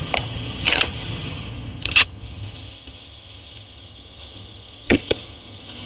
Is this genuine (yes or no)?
no